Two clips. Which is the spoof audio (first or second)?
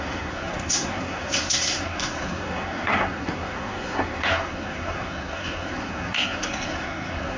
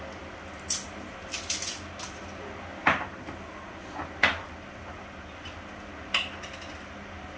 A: first